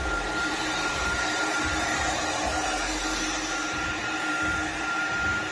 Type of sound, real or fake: fake